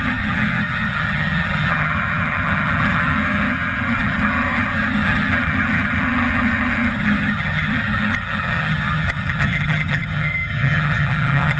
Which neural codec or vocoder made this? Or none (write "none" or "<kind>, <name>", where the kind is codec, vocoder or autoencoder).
vocoder, HiFi-GAN